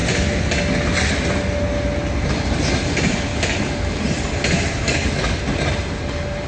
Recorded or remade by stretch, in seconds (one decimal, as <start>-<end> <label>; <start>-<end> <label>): 0.0-3.3 recorded; 3.3-4.0 remade; 4.0-4.8 recorded; 4.8-5.4 remade; 5.4-6.5 recorded